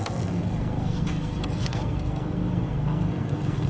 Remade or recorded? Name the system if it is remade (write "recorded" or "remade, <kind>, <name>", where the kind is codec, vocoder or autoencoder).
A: remade, codec, SNAC